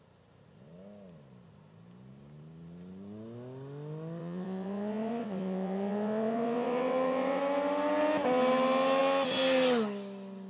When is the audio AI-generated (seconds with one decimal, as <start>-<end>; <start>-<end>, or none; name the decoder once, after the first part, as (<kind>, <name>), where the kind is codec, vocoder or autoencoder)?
4.2-7.4 (vocoder, WaveNeXt)